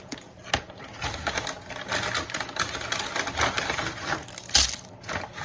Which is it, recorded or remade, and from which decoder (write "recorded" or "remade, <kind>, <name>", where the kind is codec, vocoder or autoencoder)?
recorded